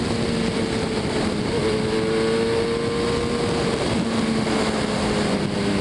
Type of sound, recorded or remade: recorded